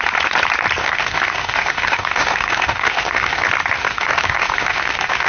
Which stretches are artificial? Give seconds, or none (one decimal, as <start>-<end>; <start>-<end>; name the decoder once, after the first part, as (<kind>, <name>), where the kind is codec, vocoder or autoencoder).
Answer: 0.8-3.4 (autoencoder, DAC-VAE); 3.8-5.3